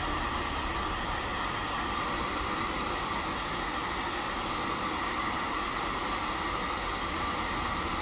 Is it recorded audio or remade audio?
remade